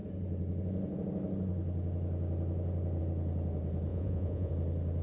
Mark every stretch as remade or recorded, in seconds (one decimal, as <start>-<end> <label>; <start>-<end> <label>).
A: 0.0-3.9 recorded; 3.9-4.5 remade; 4.5-5.0 recorded